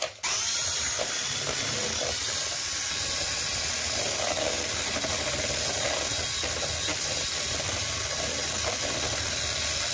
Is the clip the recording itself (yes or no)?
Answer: yes